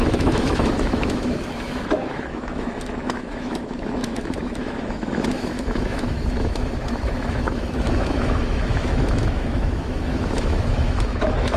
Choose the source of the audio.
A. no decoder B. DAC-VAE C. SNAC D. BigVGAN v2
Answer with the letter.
B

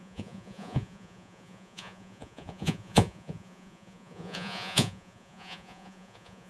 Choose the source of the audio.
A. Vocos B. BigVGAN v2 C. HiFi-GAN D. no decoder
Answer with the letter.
A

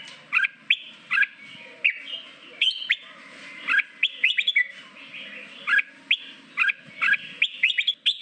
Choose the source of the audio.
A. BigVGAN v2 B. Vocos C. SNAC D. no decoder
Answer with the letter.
D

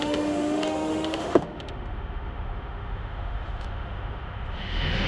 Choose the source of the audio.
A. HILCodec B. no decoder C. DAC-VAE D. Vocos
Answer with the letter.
C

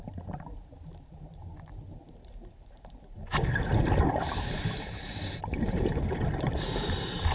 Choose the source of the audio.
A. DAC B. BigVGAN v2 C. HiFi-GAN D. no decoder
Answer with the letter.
B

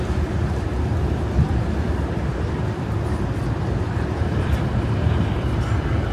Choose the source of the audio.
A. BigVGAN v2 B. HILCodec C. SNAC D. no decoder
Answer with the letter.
A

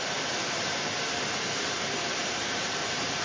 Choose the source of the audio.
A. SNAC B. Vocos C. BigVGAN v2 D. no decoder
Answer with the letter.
C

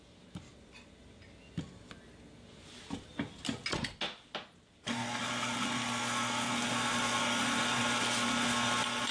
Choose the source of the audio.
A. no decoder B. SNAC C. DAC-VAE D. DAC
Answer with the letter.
A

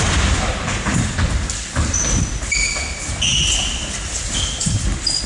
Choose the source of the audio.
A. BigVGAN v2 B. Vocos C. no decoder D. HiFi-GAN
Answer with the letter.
C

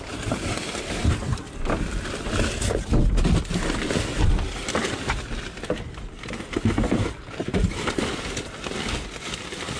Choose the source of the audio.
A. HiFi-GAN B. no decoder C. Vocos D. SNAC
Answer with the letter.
B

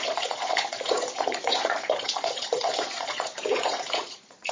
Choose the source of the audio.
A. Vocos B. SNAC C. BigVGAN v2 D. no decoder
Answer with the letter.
A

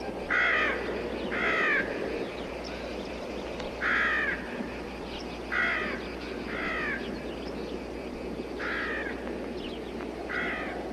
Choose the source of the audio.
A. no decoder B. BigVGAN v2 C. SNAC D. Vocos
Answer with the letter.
A